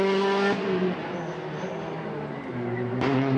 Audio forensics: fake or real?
real